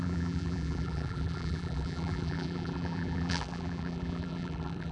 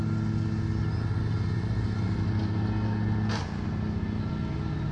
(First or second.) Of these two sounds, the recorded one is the second